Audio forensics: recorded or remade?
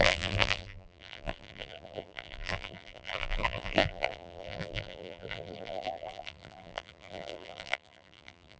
remade